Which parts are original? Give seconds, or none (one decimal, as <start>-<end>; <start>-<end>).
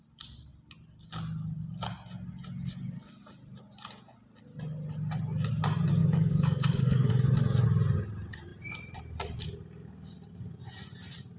0.0-6.0; 7.1-11.4